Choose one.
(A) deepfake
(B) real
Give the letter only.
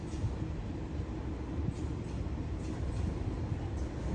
B